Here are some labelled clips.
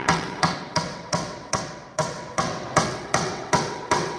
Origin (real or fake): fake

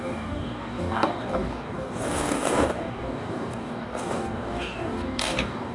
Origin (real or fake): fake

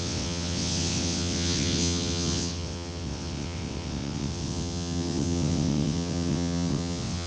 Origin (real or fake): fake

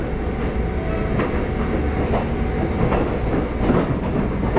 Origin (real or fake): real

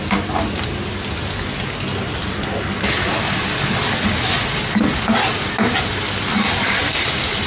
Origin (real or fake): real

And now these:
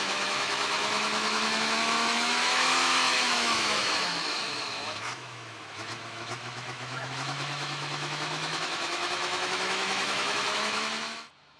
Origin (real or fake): fake